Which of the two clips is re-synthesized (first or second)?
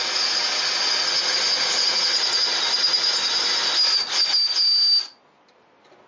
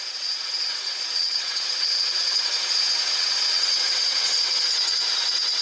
second